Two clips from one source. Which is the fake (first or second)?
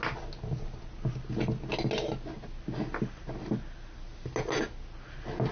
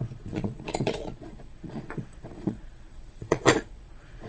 second